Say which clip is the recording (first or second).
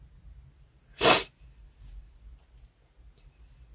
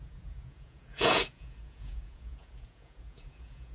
first